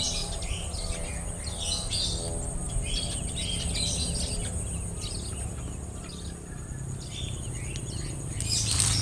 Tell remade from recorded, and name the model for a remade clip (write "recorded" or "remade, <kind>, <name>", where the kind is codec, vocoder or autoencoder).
recorded